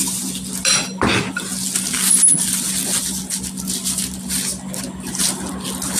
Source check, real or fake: real